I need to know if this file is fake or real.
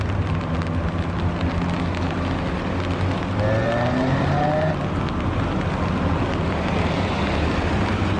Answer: real